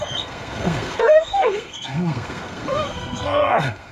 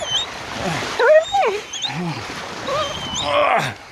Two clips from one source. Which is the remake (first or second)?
first